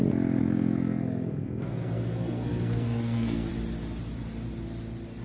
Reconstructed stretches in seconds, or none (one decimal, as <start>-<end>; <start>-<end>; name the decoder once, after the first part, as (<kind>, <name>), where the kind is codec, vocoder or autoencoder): 0.4-3.5 (codec, SNAC)